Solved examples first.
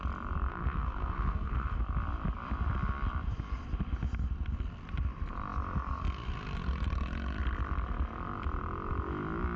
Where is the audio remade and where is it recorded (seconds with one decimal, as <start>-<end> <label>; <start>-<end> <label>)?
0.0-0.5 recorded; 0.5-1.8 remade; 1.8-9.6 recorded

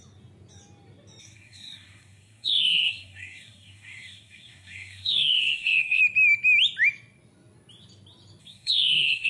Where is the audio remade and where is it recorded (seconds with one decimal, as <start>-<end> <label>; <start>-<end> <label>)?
0.0-1.2 recorded; 1.2-6.0 remade; 6.0-8.4 recorded; 8.4-9.3 remade

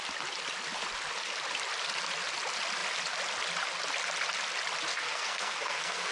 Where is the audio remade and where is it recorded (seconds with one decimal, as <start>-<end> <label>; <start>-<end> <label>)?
0.0-4.9 recorded; 4.9-6.1 remade